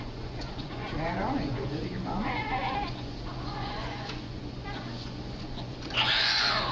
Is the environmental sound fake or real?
fake